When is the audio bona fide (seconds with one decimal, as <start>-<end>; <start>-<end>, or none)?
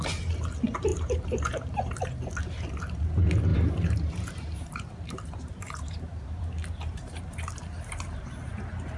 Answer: 0.0-0.9; 2.3-3.5